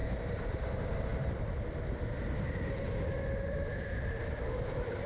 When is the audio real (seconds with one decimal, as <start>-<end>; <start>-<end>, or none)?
0.6-5.1